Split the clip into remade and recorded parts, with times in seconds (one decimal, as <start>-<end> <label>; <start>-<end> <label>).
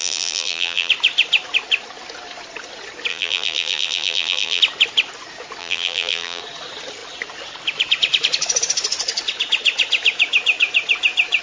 0.0-0.9 remade; 0.9-3.1 recorded; 3.1-4.6 remade; 4.6-5.6 recorded; 5.6-6.4 remade; 6.4-11.4 recorded